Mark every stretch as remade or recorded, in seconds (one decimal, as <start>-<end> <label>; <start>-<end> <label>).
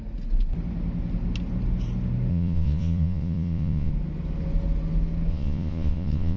0.0-2.3 recorded; 2.3-3.9 remade; 3.9-5.3 recorded; 5.3-6.4 remade